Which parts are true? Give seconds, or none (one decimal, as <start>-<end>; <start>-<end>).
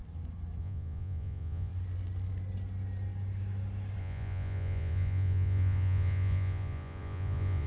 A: 0.0-0.6; 1.7-4.0